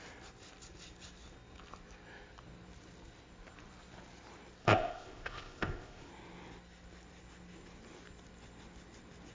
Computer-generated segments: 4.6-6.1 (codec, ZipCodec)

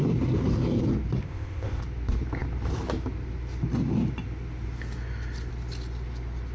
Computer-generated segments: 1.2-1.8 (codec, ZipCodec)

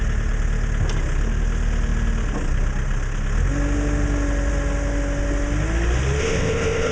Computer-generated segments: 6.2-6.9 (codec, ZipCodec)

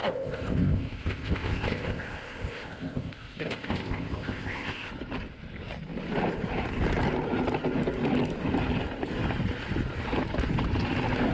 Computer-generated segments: 0.0-4.9 (codec, ZipCodec)